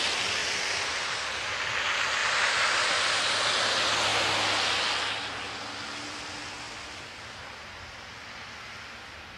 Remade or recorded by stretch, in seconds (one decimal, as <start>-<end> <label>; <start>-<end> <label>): 0.0-0.4 recorded; 0.4-1.5 remade; 1.5-2.2 recorded; 2.2-3.2 remade; 3.2-9.4 recorded